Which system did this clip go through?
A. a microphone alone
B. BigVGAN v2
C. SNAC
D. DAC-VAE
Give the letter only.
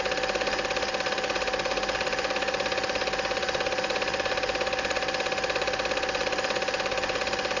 B